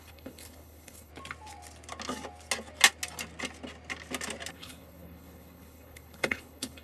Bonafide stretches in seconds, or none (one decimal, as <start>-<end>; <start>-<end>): 1.1-4.5